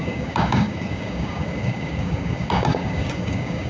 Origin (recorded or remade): remade